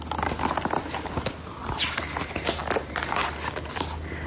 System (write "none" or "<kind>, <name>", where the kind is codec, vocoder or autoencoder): none